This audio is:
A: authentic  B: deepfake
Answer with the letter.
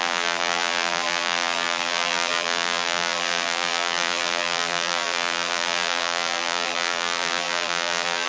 B